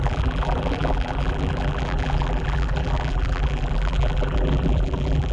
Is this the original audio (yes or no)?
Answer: no